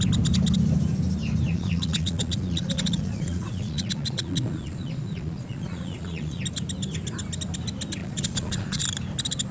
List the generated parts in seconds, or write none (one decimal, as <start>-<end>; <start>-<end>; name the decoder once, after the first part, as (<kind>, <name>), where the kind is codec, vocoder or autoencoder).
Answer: 1.5-6.4 (vocoder, Vocos); 8.0-8.8